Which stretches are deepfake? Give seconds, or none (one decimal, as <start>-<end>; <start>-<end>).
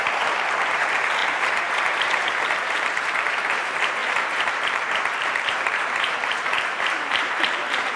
0.0-8.0